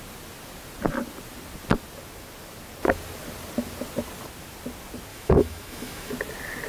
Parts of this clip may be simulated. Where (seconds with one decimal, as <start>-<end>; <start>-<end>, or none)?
5.1-6.1